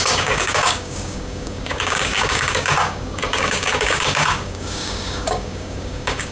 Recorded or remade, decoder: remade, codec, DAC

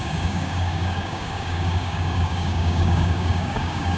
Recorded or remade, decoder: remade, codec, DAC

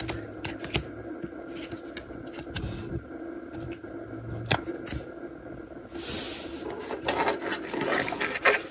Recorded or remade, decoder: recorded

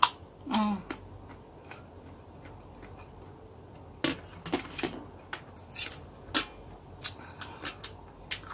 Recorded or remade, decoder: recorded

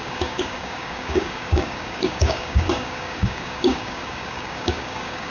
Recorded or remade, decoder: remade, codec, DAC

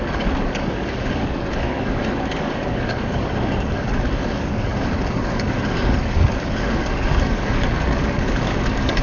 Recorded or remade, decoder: remade, codec, DAC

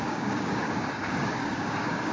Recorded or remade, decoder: remade, codec, DAC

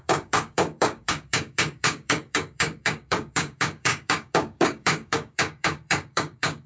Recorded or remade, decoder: remade, codec, DAC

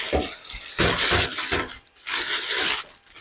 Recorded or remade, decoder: recorded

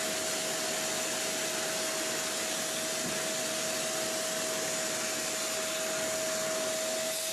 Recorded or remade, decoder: recorded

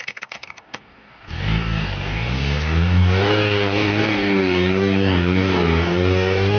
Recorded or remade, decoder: remade, codec, DAC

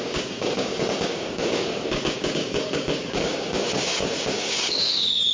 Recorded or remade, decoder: remade, codec, DAC